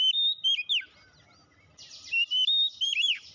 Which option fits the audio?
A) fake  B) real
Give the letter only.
B